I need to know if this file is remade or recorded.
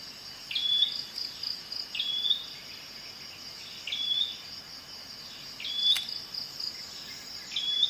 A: recorded